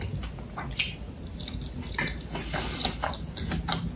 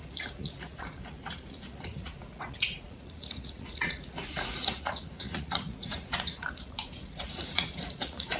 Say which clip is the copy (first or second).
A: second